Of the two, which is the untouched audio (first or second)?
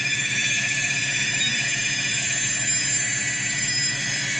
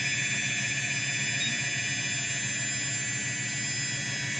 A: second